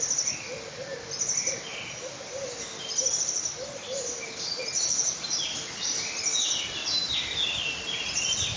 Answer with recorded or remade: recorded